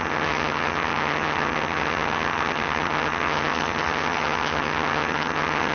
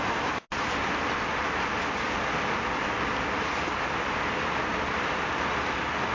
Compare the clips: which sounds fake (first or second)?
first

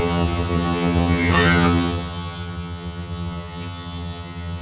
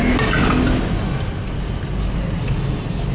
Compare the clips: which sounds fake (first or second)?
first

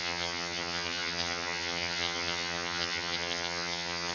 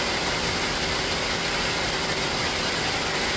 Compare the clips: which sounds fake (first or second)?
first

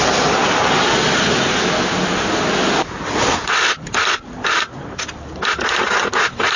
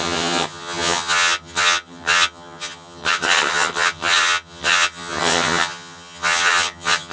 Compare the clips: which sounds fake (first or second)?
second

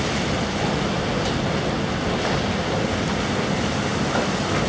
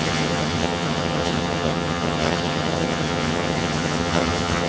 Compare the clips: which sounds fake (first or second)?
second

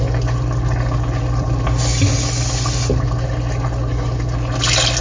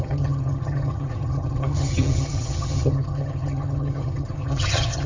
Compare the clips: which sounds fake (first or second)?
second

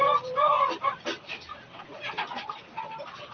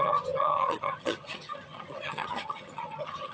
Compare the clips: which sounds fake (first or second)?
second